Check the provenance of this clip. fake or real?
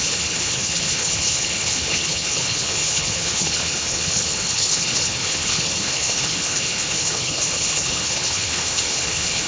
fake